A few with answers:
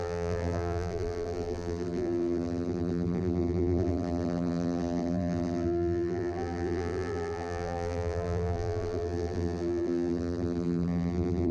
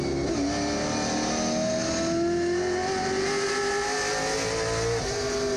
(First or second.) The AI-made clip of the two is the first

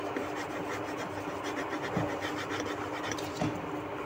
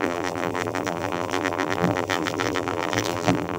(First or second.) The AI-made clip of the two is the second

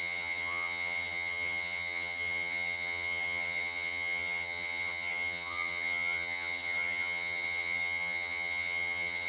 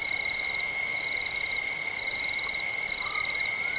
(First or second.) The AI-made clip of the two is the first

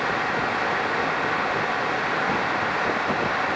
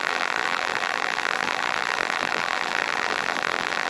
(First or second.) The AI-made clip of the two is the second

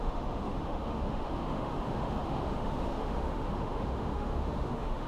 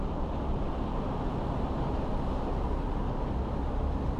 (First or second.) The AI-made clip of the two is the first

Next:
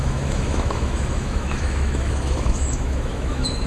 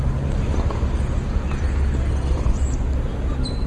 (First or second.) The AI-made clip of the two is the first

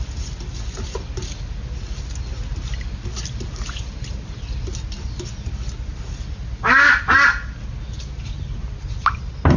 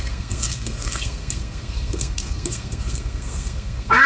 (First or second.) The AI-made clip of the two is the second